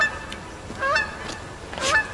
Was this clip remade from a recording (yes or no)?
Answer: no